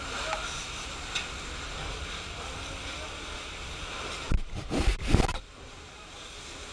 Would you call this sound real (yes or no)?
yes